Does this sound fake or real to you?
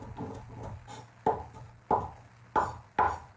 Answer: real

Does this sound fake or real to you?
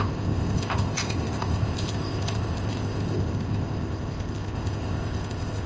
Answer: fake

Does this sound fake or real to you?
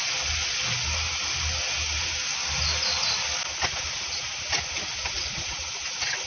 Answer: real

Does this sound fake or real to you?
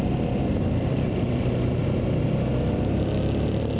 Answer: real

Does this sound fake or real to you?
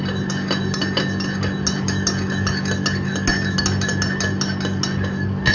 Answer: real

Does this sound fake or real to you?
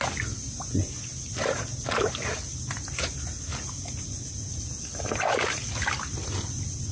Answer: real